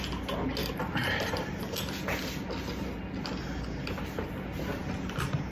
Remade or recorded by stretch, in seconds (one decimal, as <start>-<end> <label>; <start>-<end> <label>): 0.0-0.6 recorded; 0.6-1.8 remade; 1.8-5.5 recorded